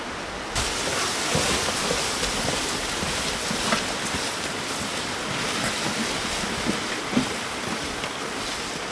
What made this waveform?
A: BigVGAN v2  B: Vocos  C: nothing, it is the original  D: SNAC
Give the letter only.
C